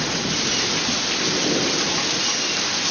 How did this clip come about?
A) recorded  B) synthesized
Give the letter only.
A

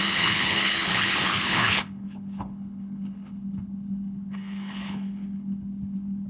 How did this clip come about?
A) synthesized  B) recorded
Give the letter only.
A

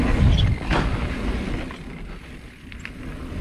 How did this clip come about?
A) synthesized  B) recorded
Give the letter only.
B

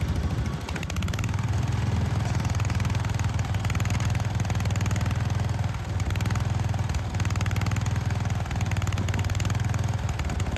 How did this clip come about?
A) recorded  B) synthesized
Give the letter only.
A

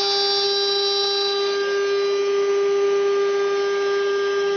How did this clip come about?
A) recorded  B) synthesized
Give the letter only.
A